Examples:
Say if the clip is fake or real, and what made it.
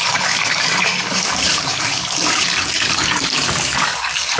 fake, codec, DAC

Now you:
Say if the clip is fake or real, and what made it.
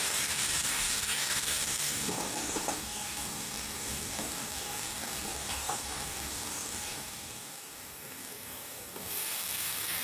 fake, codec, DAC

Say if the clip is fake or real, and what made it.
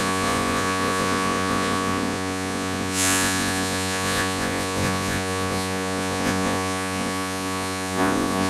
fake, vocoder, Vocos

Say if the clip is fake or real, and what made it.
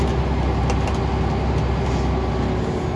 real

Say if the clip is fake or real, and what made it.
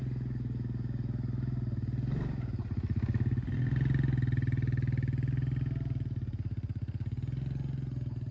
real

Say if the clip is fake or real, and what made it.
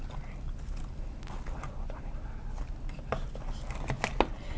real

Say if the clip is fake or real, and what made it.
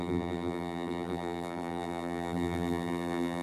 fake, vocoder, BigVGAN v2